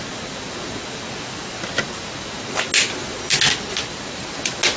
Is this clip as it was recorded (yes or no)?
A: yes